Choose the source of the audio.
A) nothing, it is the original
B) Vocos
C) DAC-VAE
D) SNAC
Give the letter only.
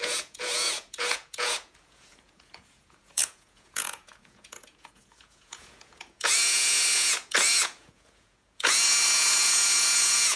B